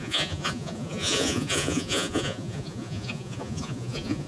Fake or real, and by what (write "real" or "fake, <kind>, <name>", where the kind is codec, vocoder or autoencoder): fake, vocoder, Vocos